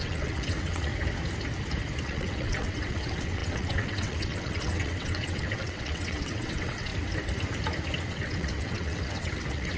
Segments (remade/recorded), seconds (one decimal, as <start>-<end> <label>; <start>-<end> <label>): 0.0-0.9 remade; 0.9-2.0 recorded; 2.0-6.9 remade; 6.9-8.1 recorded; 8.1-9.8 remade